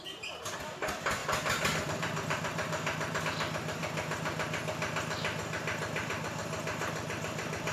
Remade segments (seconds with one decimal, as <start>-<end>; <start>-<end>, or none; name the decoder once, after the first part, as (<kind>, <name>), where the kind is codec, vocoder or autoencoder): 1.2-3.2 (vocoder, BigVGAN v2)